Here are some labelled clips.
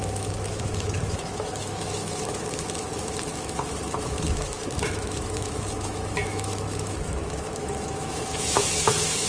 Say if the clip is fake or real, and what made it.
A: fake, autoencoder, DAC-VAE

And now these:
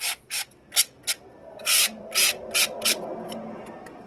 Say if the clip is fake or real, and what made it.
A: real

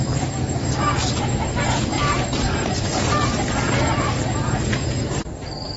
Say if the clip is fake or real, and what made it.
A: fake, vocoder, BigVGAN v2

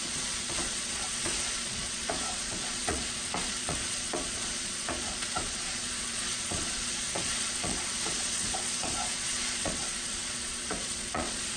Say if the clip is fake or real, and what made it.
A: fake, vocoder, Vocos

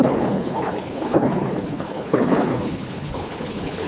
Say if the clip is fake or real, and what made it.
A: fake, codec, HILCodec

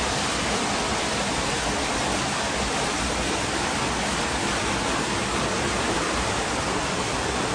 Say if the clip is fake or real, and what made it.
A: real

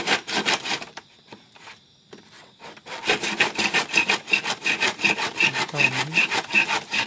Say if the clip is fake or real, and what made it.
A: fake, vocoder, BigVGAN v2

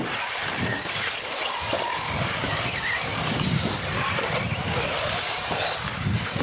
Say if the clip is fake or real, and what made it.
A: real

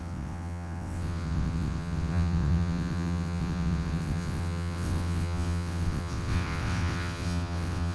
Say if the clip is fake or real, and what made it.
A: fake, vocoder, WaveNeXt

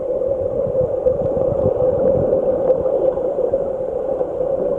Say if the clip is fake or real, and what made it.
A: real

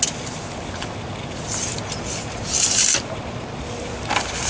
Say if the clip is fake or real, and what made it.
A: real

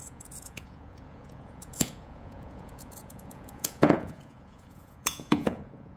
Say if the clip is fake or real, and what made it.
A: fake, vocoder, Vocos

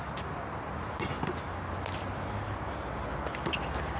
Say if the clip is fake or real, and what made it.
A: real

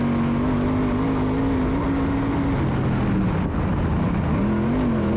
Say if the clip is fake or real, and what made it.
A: real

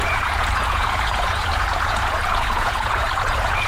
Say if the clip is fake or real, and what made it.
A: fake, vocoder, Vocos